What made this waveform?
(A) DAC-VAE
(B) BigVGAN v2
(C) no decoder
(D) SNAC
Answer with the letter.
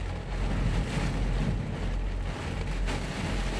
C